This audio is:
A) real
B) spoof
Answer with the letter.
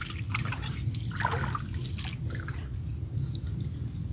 A